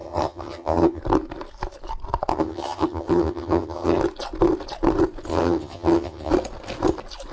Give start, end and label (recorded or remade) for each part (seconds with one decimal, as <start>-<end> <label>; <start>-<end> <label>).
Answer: 0.0-1.0 remade; 1.0-2.3 recorded; 2.3-4.0 remade; 4.0-5.3 recorded; 5.3-6.3 remade; 6.3-7.3 recorded